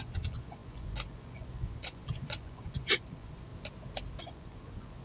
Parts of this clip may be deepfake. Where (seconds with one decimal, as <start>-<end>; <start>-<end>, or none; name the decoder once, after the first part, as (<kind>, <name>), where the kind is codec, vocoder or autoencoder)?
0.0-3.5 (vocoder, Vocos); 4.2-5.0